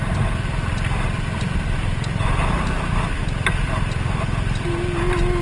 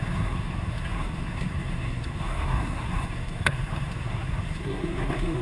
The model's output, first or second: second